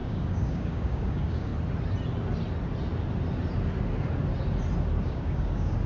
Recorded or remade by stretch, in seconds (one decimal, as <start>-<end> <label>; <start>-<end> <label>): 0.0-1.5 remade; 1.5-5.0 recorded; 5.0-5.9 remade